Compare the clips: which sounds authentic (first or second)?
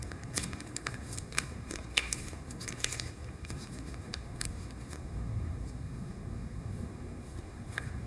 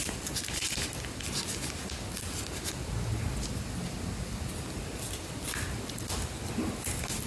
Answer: second